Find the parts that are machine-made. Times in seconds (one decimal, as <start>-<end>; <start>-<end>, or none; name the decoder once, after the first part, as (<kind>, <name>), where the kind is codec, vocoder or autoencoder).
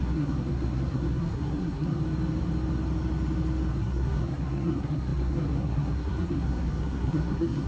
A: 0.0-2.0 (codec, SNAC); 3.7-7.7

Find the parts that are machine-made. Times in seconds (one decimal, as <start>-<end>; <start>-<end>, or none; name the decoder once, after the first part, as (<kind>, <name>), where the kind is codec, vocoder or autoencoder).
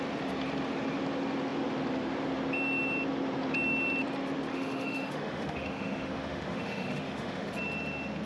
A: 4.5-7.5 (autoencoder, DAC-VAE)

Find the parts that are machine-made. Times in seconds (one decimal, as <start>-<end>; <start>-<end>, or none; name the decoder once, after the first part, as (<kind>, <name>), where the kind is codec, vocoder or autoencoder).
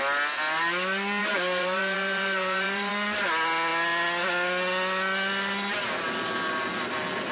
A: 1.2-2.9 (vocoder, BigVGAN v2)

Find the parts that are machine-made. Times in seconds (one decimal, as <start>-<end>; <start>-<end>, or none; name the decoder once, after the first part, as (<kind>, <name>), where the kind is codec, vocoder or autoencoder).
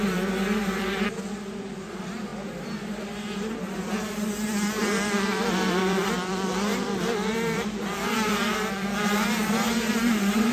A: 0.0-2.3 (vocoder, BigVGAN v2); 3.0-10.5